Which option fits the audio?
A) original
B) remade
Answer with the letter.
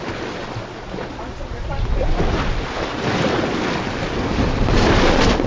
A